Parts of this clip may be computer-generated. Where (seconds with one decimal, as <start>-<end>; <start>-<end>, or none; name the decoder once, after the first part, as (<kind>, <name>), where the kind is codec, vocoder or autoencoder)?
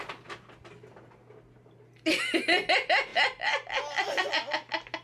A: none